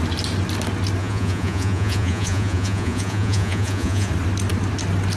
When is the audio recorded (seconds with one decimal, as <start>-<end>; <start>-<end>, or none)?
0.0-1.0; 4.1-5.2